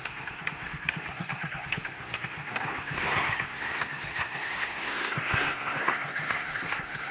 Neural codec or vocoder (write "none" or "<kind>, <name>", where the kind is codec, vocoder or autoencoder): codec, SNAC